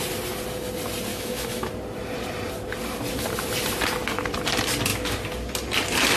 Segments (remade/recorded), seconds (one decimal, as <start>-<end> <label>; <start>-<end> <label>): 0.0-1.1 recorded; 1.1-1.7 remade; 1.7-6.2 recorded